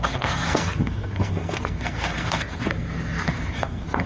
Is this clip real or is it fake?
fake